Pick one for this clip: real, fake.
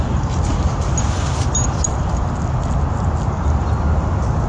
real